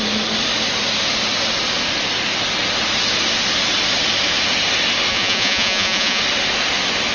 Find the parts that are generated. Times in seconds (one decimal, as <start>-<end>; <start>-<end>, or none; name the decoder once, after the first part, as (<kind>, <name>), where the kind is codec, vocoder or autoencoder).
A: 5.1-6.2 (vocoder, Vocos)